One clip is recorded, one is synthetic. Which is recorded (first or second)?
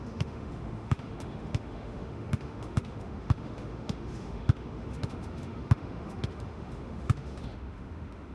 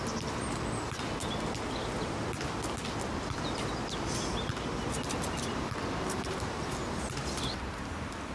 second